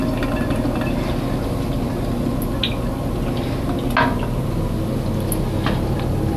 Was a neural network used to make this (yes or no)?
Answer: no